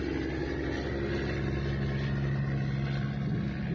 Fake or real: real